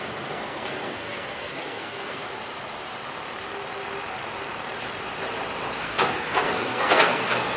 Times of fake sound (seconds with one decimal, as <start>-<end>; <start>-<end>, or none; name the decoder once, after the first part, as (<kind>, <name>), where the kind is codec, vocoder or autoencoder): 0.0-2.2 (codec, SNAC); 5.8-7.6